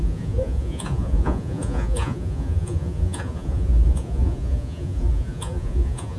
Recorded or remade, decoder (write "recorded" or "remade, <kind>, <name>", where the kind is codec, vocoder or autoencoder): remade, vocoder, Vocos